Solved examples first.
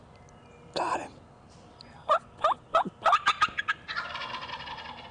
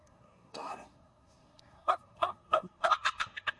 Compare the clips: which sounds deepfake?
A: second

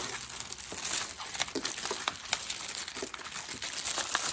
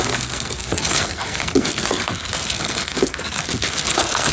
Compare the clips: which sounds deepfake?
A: second